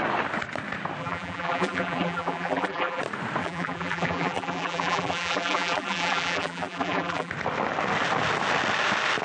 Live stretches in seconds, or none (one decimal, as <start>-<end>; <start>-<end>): 0.0-1.0; 3.0-3.4; 7.3-9.2